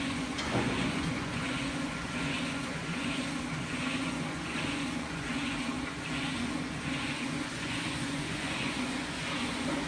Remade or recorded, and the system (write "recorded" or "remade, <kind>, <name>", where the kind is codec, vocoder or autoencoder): remade, vocoder, Vocos